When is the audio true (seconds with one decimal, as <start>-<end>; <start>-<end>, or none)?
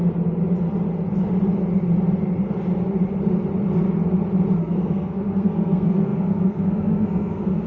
0.0-4.6